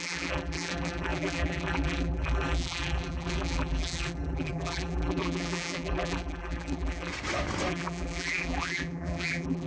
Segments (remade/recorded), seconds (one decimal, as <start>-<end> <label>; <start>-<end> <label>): 0.0-7.1 remade; 7.1-7.7 recorded; 7.7-9.7 remade